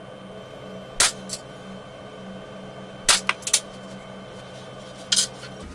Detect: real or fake real